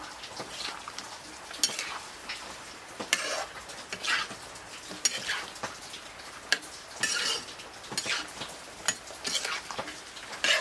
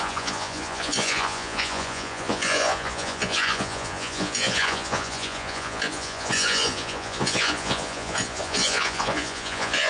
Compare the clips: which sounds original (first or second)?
first